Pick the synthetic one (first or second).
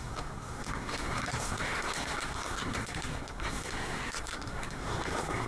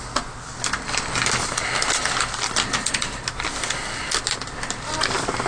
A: first